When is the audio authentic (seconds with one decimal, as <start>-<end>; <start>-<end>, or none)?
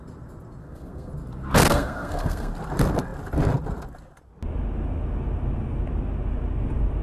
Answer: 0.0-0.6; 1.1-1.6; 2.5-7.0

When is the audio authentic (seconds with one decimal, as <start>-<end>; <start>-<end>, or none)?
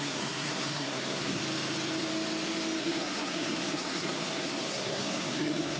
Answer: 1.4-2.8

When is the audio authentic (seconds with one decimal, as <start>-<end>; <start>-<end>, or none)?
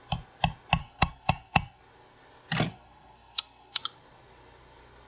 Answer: 0.0-0.8; 1.8-2.7; 3.8-5.1